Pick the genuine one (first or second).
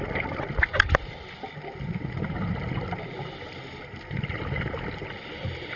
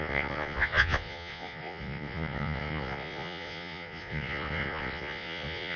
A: first